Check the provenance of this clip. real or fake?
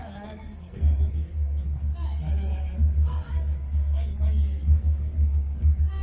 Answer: fake